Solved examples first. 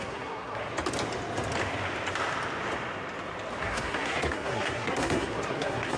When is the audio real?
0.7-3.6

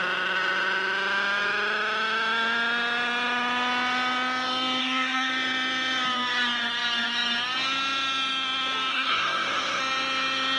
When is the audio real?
0.0-4.8; 5.3-8.9; 9.8-10.6